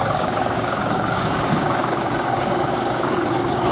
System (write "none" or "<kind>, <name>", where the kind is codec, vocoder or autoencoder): codec, DAC